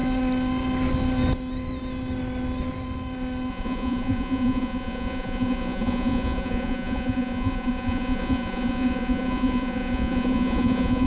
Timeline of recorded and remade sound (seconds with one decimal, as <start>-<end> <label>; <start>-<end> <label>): 0.0-3.5 recorded; 3.5-11.1 remade